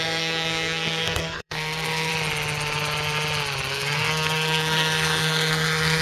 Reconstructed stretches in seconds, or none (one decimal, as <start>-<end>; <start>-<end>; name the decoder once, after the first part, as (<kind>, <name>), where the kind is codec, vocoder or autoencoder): 0.0-2.1 (codec, SNAC); 3.7-6.0